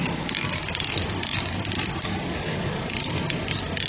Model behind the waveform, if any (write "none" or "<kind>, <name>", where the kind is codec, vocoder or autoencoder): none